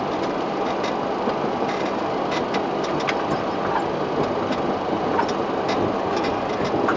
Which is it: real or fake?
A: real